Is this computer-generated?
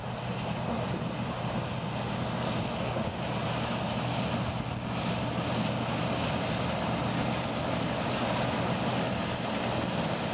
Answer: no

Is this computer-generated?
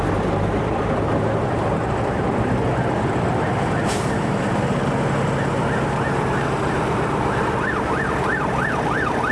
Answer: yes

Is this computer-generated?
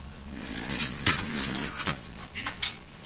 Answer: yes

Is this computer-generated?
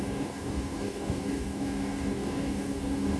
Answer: yes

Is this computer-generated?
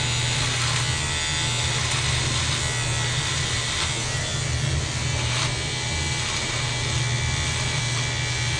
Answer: no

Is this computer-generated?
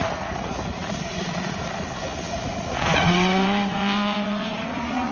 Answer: yes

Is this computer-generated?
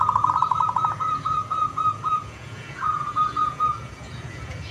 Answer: yes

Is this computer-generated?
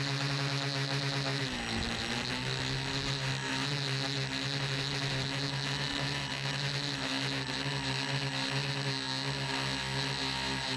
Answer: no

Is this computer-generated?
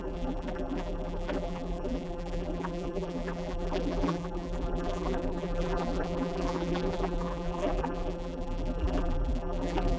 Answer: yes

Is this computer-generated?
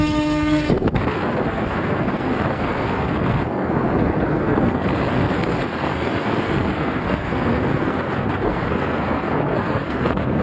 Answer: yes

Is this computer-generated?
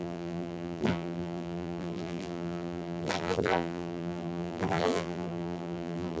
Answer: yes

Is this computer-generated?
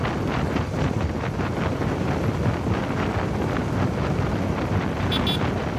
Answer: no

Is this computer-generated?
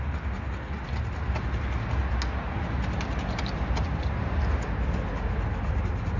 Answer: no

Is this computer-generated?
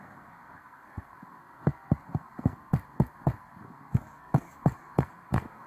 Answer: yes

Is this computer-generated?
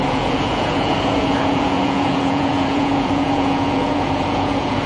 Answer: yes